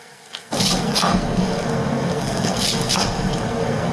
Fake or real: fake